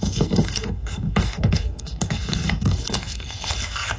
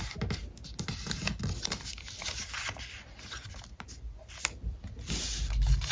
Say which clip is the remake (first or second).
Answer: first